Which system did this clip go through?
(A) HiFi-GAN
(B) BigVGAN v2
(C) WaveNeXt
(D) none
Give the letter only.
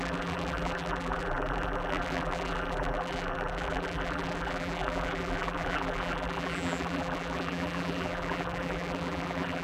B